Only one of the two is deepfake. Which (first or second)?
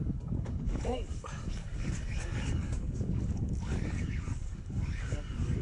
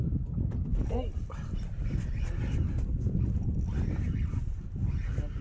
first